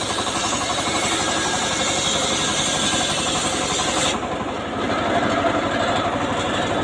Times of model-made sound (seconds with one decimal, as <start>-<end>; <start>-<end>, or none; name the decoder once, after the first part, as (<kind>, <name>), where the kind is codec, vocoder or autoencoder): none